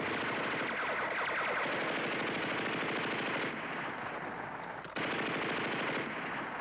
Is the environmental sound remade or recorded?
recorded